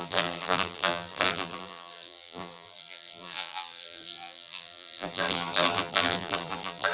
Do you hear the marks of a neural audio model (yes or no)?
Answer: yes